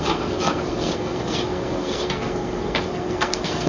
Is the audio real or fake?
fake